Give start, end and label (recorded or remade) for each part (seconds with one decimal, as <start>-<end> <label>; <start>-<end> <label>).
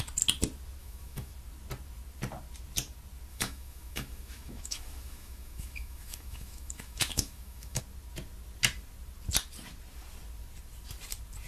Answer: 0.0-0.8 recorded; 0.8-1.3 remade; 1.3-3.3 recorded; 3.3-7.8 remade; 7.8-11.5 recorded